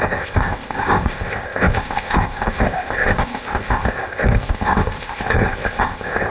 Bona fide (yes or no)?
no